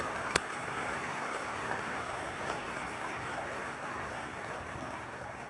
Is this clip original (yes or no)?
no